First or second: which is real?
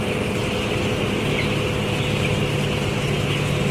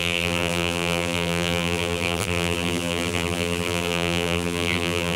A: first